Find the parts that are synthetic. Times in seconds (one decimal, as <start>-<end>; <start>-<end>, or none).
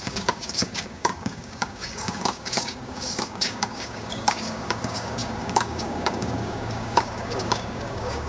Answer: 0.0-8.3